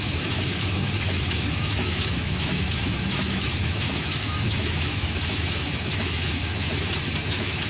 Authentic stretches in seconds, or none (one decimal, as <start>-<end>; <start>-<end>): 6.7-7.3